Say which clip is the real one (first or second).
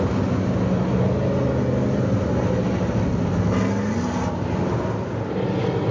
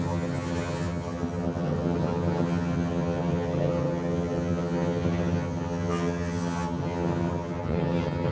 first